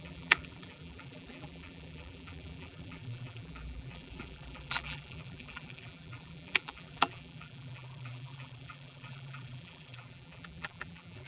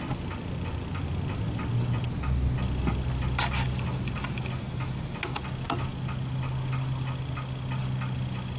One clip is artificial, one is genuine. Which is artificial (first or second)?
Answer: first